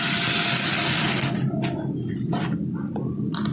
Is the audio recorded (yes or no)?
yes